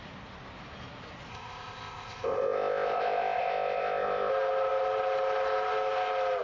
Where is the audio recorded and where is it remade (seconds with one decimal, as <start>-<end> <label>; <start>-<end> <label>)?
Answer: 0.0-1.3 recorded; 1.3-4.3 remade; 4.3-6.4 recorded